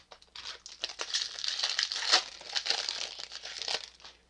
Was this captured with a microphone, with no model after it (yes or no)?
yes